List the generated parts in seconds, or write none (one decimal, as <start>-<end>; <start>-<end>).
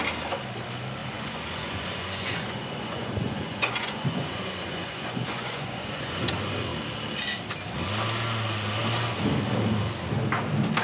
1.0-6.3